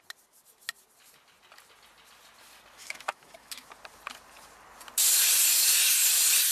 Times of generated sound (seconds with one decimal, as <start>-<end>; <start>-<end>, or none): 2.8-3.7